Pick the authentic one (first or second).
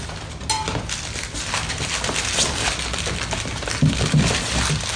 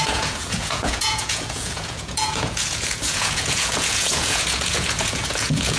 first